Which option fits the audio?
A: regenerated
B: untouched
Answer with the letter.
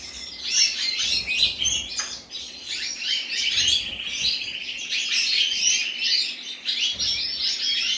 B